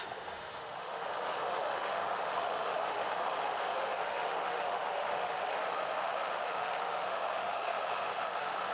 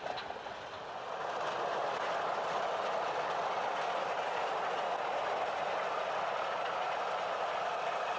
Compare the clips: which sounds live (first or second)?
second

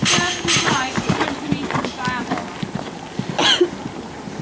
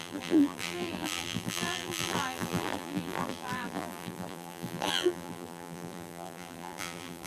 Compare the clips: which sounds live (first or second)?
first